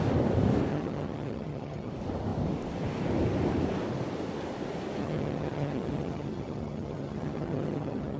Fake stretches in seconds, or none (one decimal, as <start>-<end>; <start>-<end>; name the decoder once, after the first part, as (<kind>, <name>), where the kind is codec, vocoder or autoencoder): 0.7-1.9 (vocoder, HiFi-GAN); 5.0-8.2